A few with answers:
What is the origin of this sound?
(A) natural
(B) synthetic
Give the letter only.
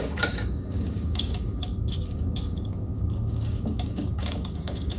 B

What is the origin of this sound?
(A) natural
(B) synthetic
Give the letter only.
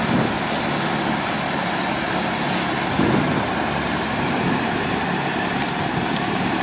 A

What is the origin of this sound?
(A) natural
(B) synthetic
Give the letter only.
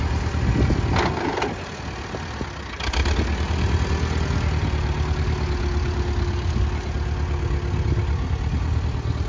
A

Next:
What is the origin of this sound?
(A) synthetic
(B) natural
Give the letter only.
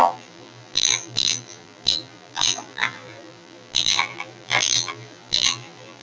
A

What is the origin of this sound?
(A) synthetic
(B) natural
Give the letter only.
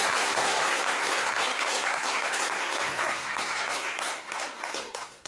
A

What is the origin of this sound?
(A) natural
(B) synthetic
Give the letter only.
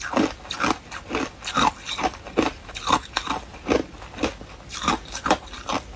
A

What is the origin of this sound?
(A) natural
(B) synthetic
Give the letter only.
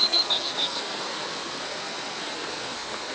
B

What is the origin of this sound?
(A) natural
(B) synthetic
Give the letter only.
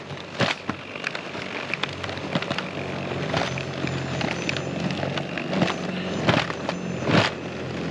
A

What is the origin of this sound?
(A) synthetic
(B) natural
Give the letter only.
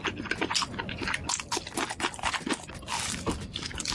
B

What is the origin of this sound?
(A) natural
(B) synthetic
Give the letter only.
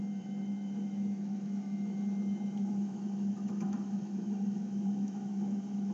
B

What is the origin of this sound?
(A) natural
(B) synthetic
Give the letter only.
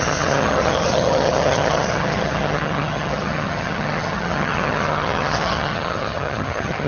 B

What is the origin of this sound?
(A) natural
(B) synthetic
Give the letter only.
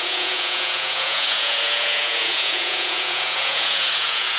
B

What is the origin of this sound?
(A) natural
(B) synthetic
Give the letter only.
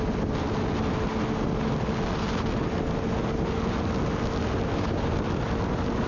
A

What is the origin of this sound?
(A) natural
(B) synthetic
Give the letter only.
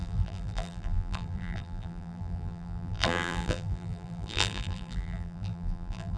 B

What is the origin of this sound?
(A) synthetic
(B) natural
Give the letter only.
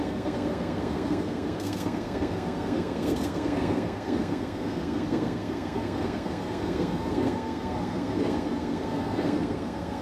A